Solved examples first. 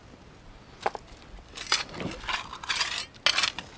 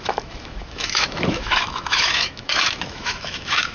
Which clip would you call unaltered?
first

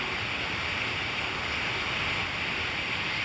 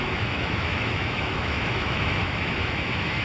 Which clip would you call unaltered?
first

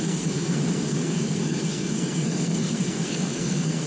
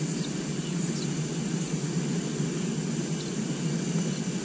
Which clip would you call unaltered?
second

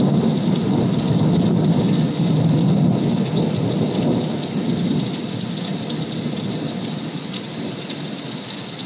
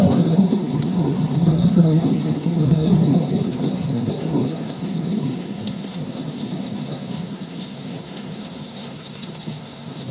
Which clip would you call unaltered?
first